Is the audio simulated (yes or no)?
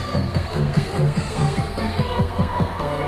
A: yes